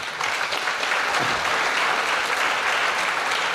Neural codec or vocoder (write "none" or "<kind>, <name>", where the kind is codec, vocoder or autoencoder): none